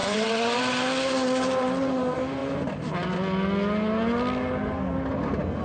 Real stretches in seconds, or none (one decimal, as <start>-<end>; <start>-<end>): 0.6-5.6